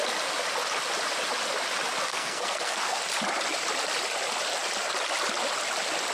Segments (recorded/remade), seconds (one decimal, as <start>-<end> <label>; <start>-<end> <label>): 0.0-2.1 recorded; 2.1-3.0 remade; 3.0-6.1 recorded